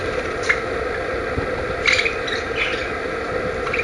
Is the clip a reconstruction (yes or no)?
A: no